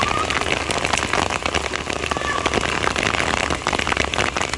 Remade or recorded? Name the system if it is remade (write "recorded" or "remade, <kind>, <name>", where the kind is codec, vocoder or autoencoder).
recorded